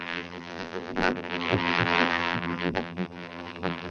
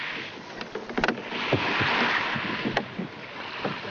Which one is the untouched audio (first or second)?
second